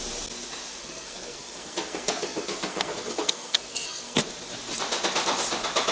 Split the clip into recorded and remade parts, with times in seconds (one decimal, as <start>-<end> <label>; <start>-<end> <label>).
0.0-0.7 recorded; 0.7-4.2 remade; 4.2-5.9 recorded